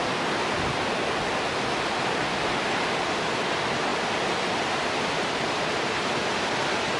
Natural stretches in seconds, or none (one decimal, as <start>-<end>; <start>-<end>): 0.0-7.0